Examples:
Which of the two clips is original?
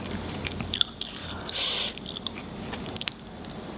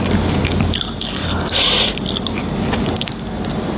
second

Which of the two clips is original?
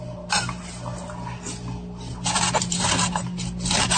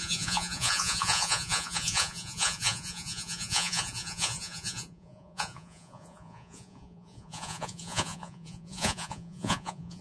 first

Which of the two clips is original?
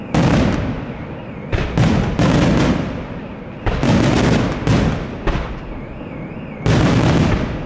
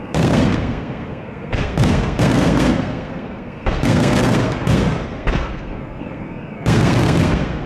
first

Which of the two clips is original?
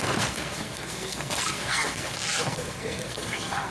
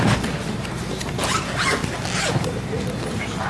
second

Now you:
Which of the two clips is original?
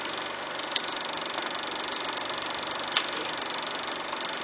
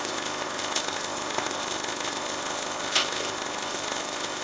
first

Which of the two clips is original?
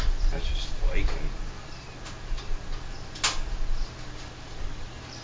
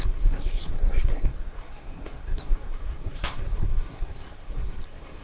first